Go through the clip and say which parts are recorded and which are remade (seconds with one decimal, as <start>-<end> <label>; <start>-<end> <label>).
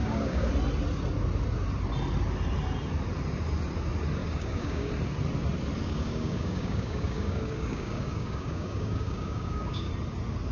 0.0-0.5 remade; 0.5-4.2 recorded; 4.2-4.9 remade; 4.9-5.8 recorded; 5.8-9.9 remade; 9.9-10.5 recorded